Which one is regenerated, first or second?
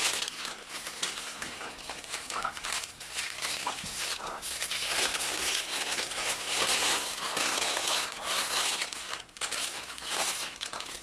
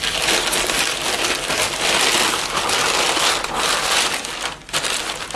first